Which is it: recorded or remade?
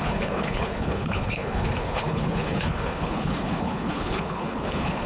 remade